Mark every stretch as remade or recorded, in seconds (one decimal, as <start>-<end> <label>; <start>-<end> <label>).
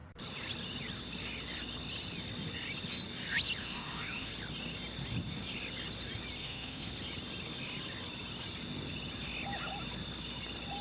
0.0-3.6 recorded; 3.6-4.3 remade; 4.3-6.4 recorded; 6.4-6.9 remade; 6.9-10.8 recorded